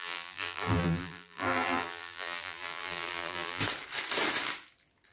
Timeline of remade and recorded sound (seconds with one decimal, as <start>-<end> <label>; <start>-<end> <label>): 0.0-3.6 remade; 3.6-5.1 recorded